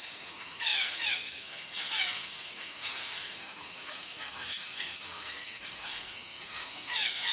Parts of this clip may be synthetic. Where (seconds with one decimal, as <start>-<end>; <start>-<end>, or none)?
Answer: 0.0-7.3